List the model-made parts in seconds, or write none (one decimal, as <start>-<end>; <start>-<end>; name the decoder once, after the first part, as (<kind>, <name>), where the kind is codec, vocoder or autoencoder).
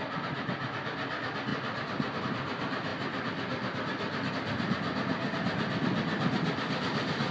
none